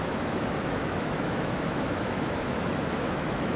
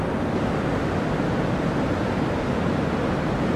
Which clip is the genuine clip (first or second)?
second